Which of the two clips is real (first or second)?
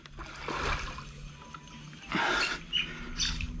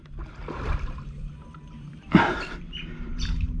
first